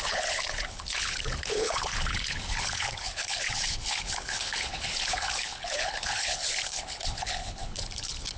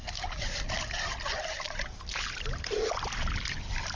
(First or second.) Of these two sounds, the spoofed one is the first